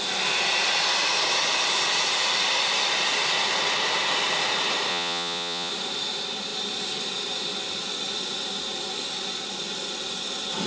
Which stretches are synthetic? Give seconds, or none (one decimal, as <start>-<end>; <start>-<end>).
4.9-5.7